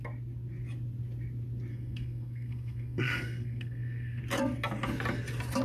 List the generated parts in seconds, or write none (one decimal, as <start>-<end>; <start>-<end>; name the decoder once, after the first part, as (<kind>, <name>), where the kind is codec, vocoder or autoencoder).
1.7-4.2 (codec, SNAC)